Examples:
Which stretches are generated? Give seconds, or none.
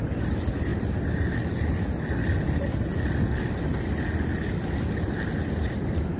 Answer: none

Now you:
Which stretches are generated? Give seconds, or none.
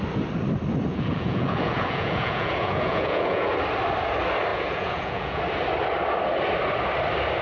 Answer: 0.9-3.5 (vocoder, Vocos); 4.5-5.4